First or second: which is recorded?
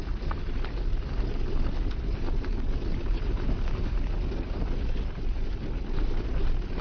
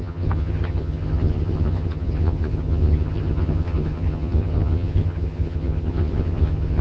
first